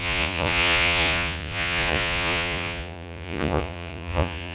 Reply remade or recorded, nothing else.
remade